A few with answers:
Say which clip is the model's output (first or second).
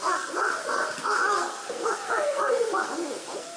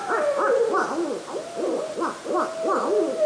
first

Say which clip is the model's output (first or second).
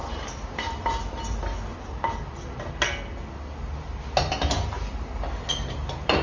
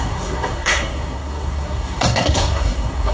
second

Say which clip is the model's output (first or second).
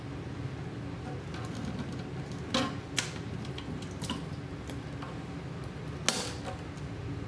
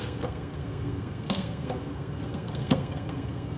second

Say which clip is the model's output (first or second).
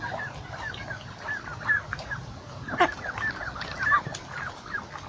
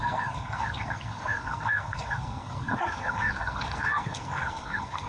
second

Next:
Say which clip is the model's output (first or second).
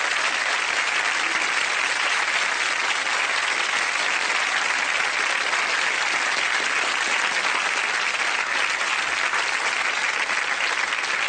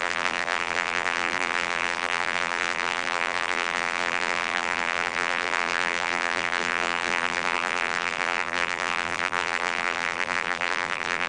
second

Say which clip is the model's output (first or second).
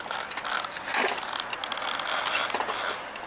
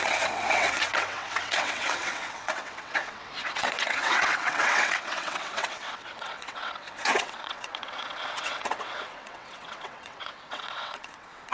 second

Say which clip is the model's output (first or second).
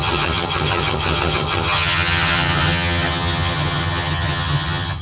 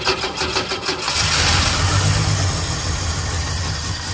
first